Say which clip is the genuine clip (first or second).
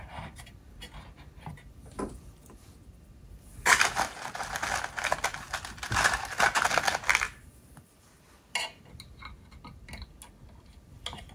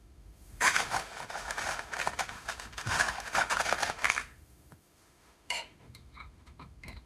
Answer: first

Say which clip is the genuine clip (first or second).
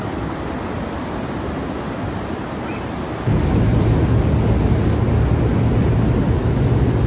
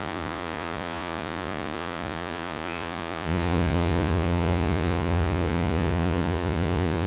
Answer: first